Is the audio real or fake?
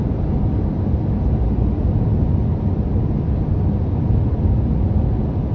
real